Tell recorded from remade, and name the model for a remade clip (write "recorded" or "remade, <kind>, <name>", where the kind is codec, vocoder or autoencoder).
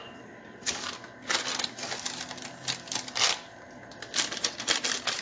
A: recorded